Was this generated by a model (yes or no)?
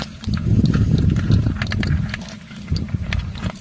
no